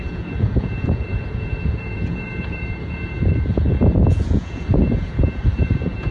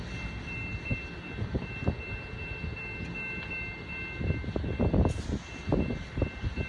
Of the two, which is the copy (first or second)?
first